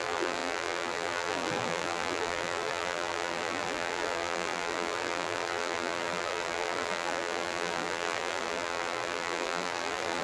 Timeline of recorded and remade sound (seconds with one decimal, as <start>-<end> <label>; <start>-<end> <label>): 0.0-10.2 remade